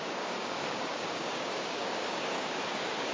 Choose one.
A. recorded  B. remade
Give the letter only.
B